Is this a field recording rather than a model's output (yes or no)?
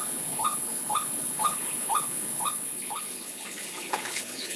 no